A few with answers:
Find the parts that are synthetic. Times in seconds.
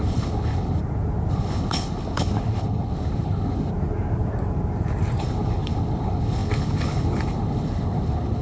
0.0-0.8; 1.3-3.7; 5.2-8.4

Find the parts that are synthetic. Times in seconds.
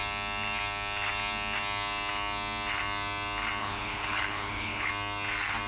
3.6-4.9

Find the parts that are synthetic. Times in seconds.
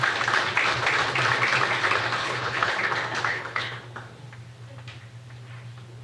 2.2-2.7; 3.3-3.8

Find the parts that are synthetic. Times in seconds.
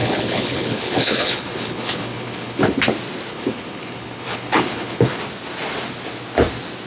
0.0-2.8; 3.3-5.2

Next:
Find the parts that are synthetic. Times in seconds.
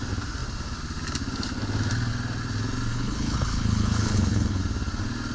2.9-4.6